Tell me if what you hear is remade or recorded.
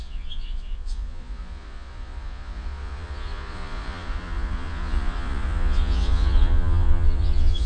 remade